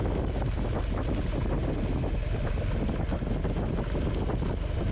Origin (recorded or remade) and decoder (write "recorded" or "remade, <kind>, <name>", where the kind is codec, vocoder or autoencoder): recorded